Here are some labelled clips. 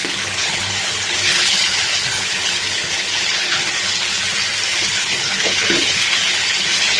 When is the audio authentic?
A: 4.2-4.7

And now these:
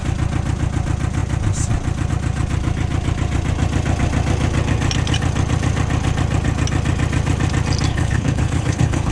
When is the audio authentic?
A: 0.0-7.9

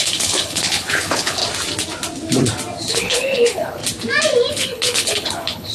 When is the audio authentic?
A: 1.4-2.9; 3.8-4.5

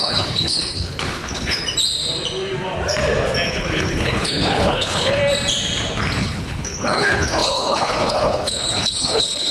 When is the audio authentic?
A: 1.6-3.5; 5.2-6.2

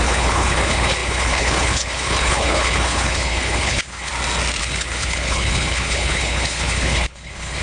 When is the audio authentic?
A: 4.1-4.6